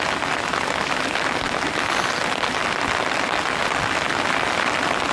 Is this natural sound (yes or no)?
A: yes